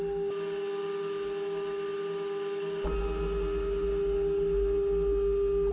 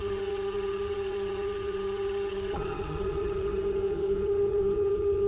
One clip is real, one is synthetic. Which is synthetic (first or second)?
second